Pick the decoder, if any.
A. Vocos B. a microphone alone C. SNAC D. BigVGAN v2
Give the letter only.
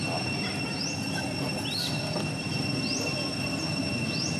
B